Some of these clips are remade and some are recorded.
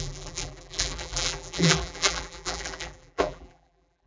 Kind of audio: remade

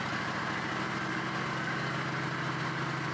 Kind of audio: recorded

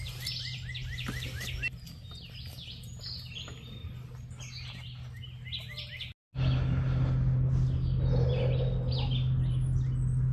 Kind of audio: recorded